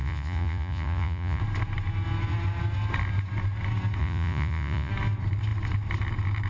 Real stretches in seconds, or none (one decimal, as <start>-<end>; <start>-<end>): 1.4-4.0; 4.9-6.5